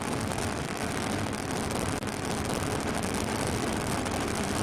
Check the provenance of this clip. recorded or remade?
recorded